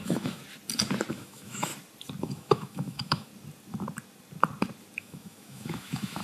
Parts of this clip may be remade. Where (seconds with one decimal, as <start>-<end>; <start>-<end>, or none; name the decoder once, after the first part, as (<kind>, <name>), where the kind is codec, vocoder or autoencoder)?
0.0-0.4 (autoencoder, DAC-VAE); 1.1-1.7; 2.2-3.3; 5.0-6.2

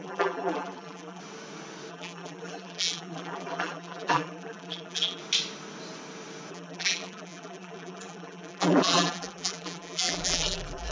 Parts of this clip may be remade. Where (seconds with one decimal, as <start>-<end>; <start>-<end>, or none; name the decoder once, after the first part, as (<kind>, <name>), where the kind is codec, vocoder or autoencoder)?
0.0-1.2 (vocoder, BigVGAN v2); 1.9-5.2; 6.5-10.9

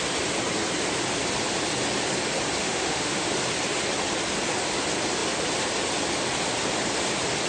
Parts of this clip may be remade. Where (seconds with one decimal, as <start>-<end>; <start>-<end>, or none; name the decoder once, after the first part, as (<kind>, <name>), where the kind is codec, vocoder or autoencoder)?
2.6-3.3 (autoencoder, DAC-VAE)

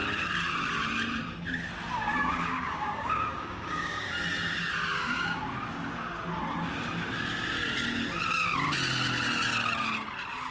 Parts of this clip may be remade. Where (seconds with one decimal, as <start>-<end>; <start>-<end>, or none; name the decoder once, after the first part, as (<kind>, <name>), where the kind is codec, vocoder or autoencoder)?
2.2-4.1 (codec, DAC); 4.9-5.5

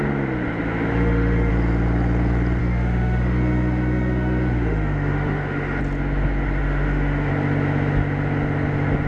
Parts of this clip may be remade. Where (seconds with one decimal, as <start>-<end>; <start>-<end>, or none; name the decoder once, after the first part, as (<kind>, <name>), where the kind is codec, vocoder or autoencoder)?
0.9-1.5 (autoencoder, DAC-VAE); 2.6-5.8; 6.6-7.3

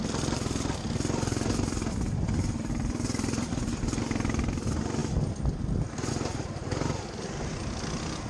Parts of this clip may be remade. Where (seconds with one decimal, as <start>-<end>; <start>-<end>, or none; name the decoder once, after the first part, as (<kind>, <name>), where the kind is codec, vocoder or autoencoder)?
0.0-8.3 (vocoder, BigVGAN v2)